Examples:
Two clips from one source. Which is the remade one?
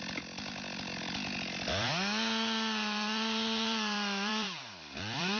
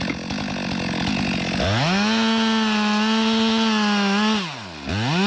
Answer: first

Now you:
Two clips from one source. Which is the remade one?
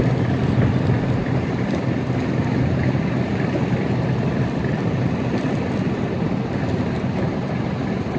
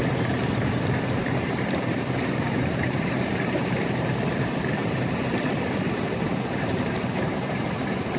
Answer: second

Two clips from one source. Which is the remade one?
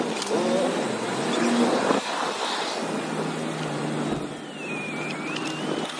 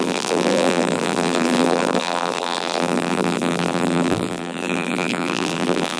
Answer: second